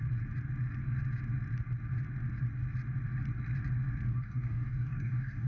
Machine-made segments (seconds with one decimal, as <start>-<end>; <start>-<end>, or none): 4.1-5.5